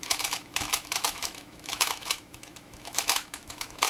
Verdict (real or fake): fake